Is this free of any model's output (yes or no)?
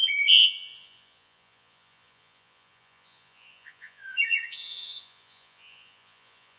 no